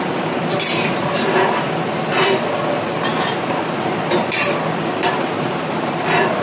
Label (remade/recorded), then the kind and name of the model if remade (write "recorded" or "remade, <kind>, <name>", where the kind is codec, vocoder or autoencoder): recorded